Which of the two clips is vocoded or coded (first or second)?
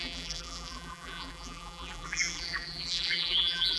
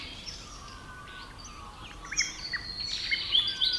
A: first